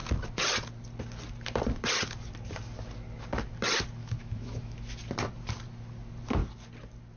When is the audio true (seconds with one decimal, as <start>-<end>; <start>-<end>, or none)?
0.0-4.0; 4.8-7.2